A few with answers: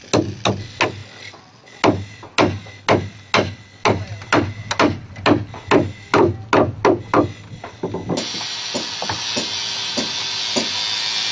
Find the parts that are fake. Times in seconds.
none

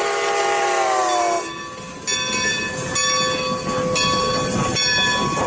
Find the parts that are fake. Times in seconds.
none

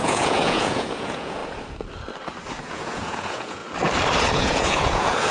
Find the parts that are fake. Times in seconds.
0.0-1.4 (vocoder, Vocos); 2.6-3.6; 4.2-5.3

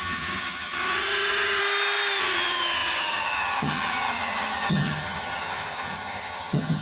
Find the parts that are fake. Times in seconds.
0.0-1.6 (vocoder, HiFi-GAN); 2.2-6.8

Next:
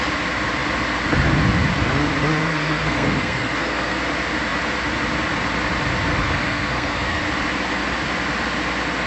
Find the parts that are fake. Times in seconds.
2.4-4.0 (codec, SNAC); 6.1-7.2